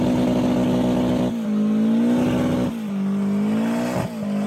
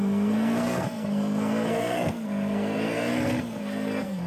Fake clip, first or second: second